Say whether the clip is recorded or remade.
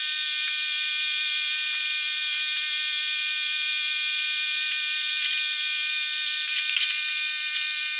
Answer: recorded